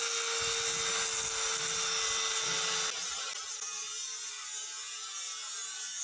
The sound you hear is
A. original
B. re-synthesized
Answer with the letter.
A